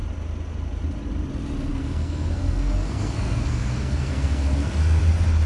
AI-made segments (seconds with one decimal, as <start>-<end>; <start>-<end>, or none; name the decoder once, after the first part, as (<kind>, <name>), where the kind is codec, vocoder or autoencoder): 1.7-5.0 (codec, SNAC)